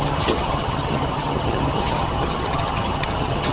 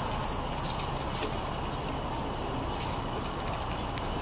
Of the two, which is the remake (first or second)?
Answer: first